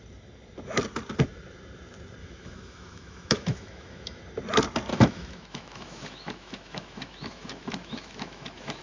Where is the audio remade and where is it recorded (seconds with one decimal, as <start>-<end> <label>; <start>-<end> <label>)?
0.0-2.2 recorded; 2.2-4.2 remade; 4.2-4.9 recorded; 4.9-8.8 remade

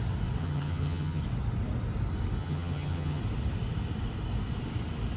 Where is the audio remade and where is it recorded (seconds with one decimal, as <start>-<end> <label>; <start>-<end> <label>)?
0.0-0.4 recorded; 0.4-1.2 remade; 1.2-2.4 recorded; 2.4-3.2 remade; 3.2-5.2 recorded

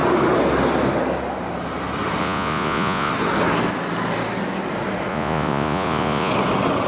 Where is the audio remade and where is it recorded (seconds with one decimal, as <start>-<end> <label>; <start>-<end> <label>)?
0.0-2.2 recorded; 2.2-3.1 remade; 3.1-5.1 recorded; 5.1-6.3 remade; 6.3-6.9 recorded

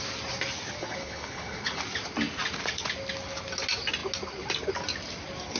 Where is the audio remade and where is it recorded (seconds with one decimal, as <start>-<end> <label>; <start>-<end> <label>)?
0.0-0.8 recorded; 0.8-1.8 remade; 1.8-5.6 recorded

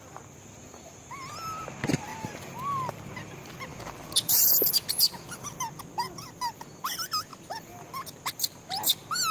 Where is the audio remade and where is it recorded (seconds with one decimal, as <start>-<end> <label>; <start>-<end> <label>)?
0.0-9.3 recorded